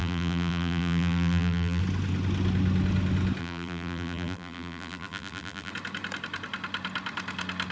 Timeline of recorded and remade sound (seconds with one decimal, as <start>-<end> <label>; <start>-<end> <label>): 0.0-1.8 remade; 1.8-3.4 recorded; 3.4-5.7 remade; 5.7-7.7 recorded